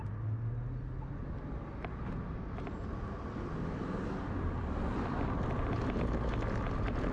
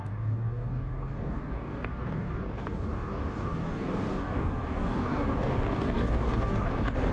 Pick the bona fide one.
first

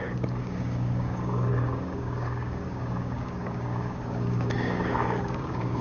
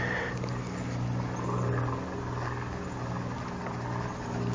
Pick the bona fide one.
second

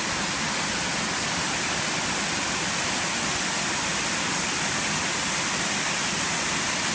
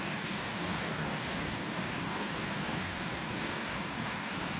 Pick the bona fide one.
first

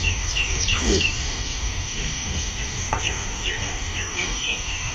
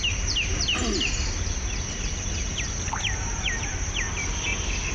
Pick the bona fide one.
second